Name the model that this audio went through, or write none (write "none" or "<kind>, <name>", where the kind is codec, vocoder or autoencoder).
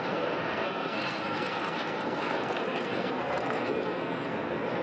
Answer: codec, SNAC